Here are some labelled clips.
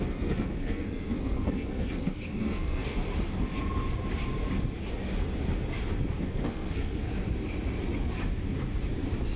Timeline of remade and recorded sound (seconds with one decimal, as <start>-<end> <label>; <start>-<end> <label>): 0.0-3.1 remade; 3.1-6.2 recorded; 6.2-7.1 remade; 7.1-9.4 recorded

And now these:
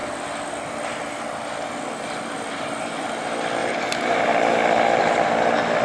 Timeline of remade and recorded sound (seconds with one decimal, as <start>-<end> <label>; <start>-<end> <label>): 0.0-3.6 recorded; 3.6-4.2 remade; 4.2-5.8 recorded

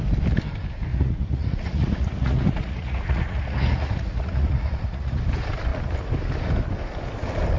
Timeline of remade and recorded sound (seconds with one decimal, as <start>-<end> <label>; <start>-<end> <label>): 0.0-0.9 recorded; 0.9-5.2 remade; 5.2-7.6 recorded

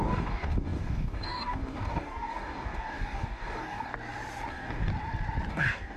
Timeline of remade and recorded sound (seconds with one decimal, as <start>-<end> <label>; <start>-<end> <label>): 0.0-3.9 remade; 3.9-4.5 recorded; 4.5-4.9 remade; 4.9-5.5 recorded; 5.5-6.0 remade

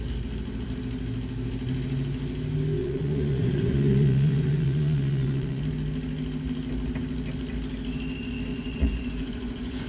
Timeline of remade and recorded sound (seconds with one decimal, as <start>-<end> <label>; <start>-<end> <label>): 0.0-2.8 recorded; 2.8-5.6 remade; 5.6-8.5 recorded; 8.5-9.9 remade

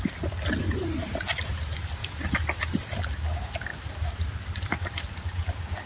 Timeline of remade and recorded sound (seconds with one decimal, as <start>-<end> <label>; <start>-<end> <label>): 0.0-5.9 recorded

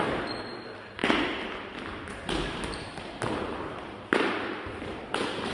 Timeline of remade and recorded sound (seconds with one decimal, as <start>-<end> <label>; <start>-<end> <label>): 0.0-5.5 recorded

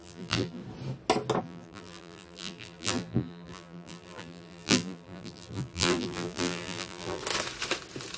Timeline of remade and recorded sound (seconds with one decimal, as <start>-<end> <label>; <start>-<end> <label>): 0.0-0.6 remade; 0.6-1.4 recorded; 1.4-7.2 remade; 7.2-8.2 recorded